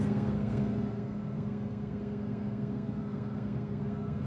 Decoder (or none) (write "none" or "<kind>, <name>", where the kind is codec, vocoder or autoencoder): codec, SNAC